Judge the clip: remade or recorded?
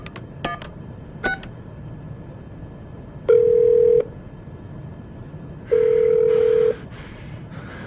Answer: recorded